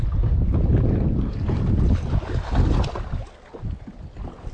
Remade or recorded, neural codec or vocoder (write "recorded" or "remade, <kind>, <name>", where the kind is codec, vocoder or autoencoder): recorded